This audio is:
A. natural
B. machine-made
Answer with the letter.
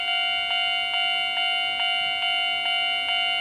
A